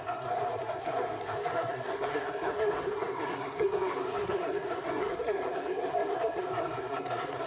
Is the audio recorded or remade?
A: remade